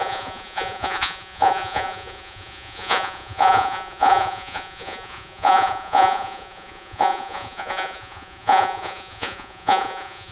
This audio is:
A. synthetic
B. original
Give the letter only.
A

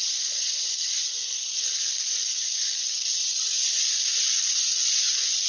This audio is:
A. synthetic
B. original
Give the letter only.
B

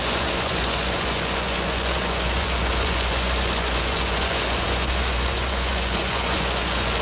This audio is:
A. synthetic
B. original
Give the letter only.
A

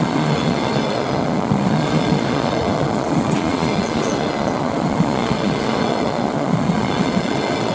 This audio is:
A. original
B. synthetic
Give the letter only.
B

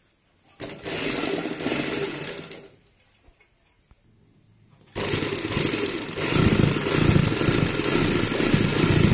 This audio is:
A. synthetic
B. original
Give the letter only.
B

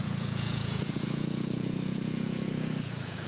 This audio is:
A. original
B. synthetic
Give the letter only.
B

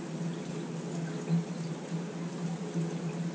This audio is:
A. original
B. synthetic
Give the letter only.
A